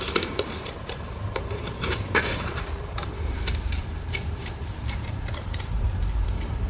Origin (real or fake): fake